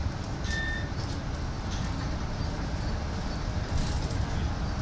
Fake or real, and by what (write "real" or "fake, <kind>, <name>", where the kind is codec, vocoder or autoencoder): real